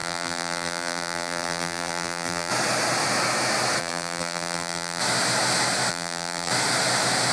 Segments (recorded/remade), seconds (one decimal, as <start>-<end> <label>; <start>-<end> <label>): 0.0-2.5 remade; 2.5-3.8 recorded; 3.8-5.0 remade; 5.0-5.9 recorded; 5.9-6.5 remade; 6.5-7.3 recorded